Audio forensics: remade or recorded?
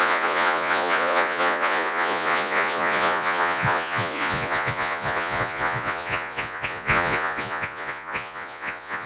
remade